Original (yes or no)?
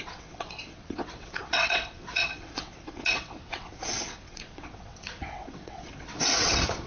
no